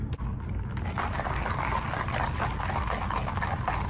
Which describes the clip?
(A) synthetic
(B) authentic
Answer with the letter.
B